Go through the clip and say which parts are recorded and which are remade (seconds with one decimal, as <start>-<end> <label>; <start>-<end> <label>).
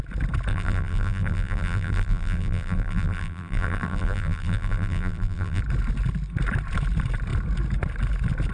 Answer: 0.0-0.5 recorded; 0.5-5.6 remade; 5.6-8.5 recorded